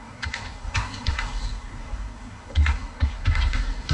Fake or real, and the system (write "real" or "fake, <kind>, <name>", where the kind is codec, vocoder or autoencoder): fake, codec, SNAC